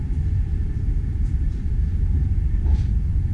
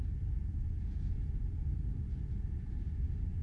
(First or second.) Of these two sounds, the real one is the second